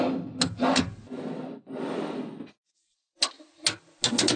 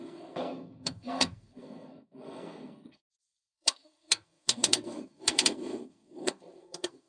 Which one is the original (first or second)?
first